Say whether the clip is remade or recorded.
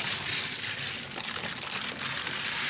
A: recorded